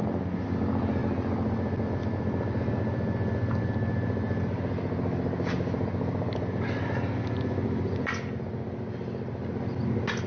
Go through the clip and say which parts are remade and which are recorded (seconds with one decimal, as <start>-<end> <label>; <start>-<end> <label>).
0.0-10.3 recorded